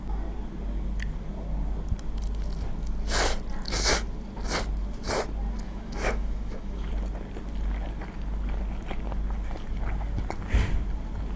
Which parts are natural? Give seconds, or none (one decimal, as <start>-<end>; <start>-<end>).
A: 0.0-5.6; 6.9-11.4